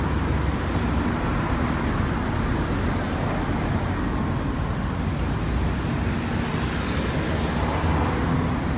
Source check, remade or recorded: recorded